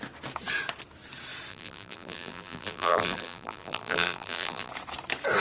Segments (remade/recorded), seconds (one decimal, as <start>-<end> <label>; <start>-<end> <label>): 0.0-1.5 recorded; 1.5-4.7 remade; 4.7-5.4 recorded